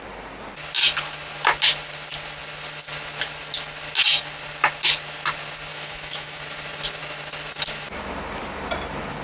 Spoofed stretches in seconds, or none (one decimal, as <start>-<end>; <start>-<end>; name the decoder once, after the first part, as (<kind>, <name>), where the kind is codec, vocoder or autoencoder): 5.7-6.4 (autoencoder, DAC-VAE)